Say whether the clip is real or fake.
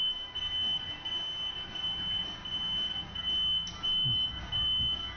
real